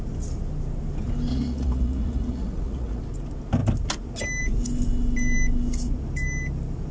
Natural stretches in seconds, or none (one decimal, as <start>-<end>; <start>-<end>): 0.0-1.3; 3.0-6.9